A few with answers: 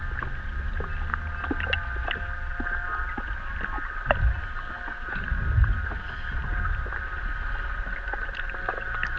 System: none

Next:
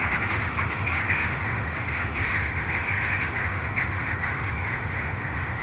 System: autoencoder, DAC-VAE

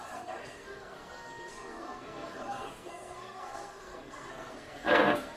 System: codec, SNAC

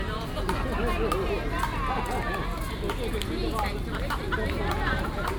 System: none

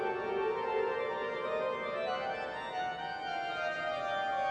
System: none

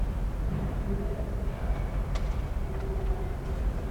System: none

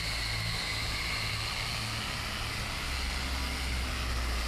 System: none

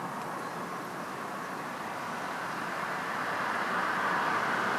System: none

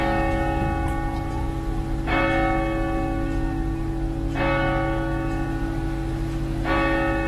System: none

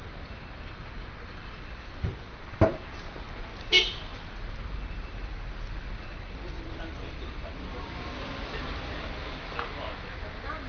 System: none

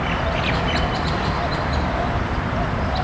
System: none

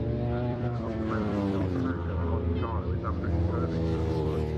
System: vocoder, BigVGAN v2